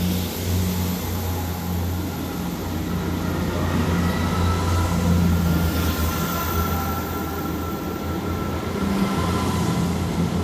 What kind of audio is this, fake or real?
real